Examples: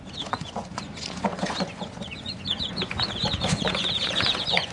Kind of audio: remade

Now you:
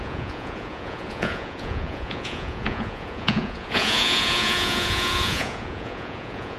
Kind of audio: remade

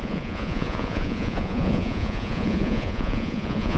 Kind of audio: remade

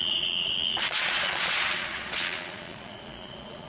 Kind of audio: remade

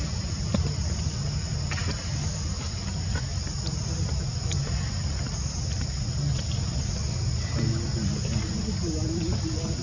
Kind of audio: recorded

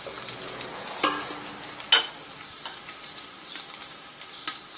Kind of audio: recorded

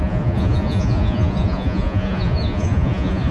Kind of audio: remade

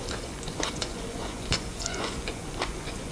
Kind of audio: remade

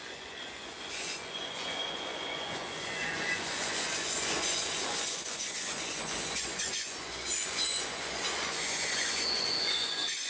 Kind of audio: remade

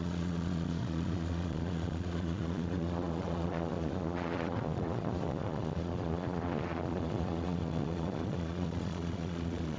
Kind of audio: remade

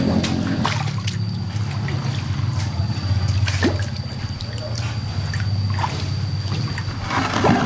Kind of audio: recorded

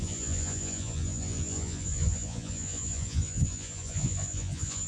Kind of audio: remade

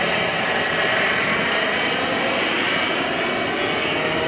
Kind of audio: recorded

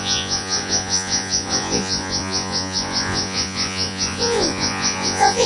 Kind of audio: remade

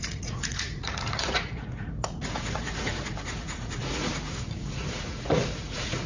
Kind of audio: remade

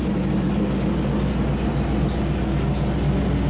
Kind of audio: recorded